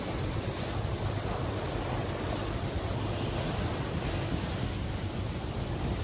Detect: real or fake real